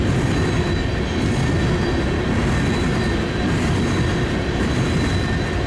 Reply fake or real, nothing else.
real